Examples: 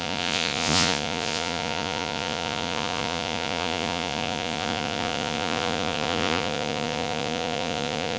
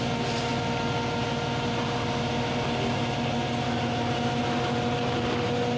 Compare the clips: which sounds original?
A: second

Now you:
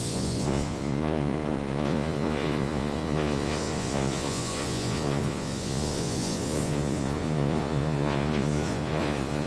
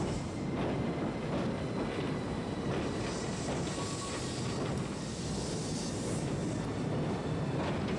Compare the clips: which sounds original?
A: second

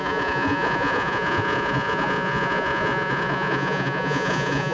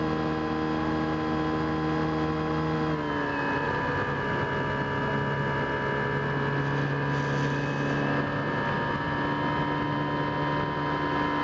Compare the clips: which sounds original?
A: second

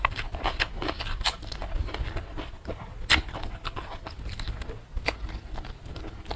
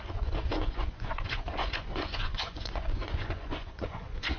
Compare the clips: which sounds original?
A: first